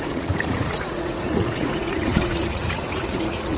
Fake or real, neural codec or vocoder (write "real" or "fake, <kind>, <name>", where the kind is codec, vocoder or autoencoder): fake, vocoder, Vocos